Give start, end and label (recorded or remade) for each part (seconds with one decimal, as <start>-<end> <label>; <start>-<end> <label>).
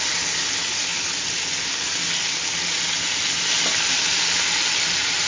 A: 0.0-5.3 recorded